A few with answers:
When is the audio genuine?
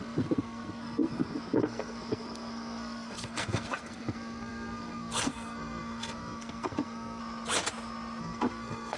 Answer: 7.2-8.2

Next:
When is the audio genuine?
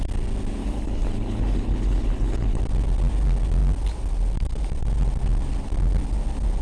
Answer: 0.0-0.6; 2.6-6.6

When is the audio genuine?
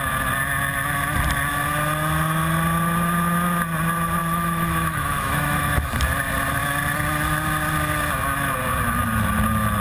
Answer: 0.0-4.2; 5.9-9.8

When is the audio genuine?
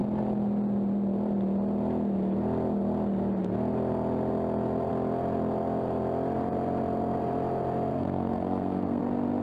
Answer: 0.0-7.9; 9.0-9.4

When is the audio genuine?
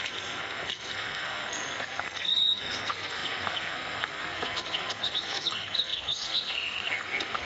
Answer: none